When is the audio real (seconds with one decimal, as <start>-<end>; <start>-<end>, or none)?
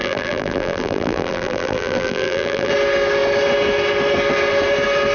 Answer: 2.7-5.1